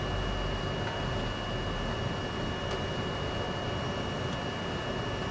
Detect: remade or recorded recorded